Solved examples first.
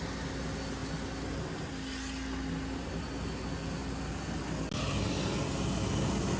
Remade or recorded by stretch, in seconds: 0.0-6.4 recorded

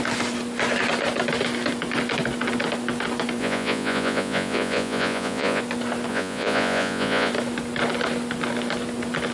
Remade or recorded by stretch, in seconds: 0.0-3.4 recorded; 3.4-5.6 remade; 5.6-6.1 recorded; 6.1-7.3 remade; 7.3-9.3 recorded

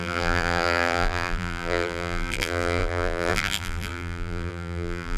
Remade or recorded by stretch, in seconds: 0.0-5.2 remade